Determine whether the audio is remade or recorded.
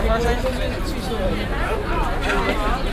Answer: recorded